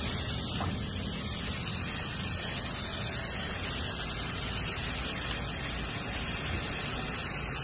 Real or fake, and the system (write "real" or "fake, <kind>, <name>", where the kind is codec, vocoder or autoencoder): real